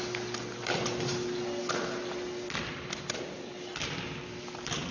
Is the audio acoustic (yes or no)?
yes